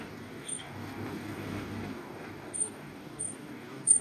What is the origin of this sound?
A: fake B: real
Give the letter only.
A